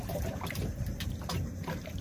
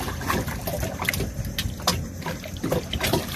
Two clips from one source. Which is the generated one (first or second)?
first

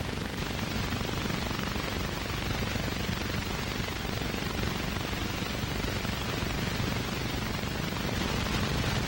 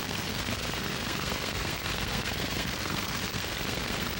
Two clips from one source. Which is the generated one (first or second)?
second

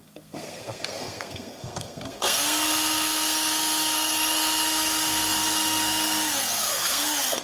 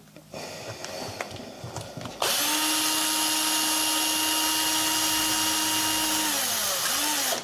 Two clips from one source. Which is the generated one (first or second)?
first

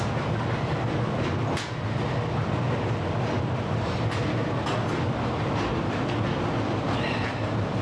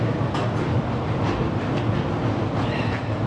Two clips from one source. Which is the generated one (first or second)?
second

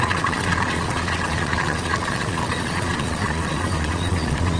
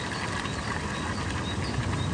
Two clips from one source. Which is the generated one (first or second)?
first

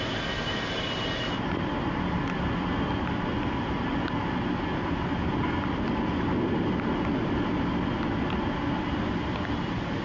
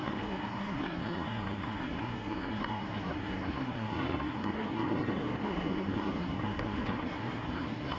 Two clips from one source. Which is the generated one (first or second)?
second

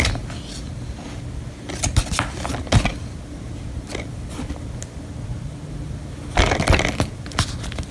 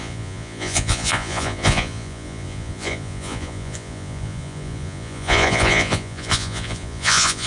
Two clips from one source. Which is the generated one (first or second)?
second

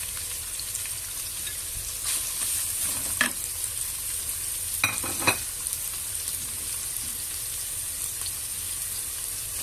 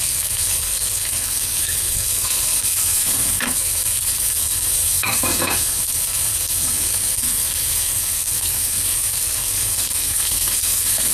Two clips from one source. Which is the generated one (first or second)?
second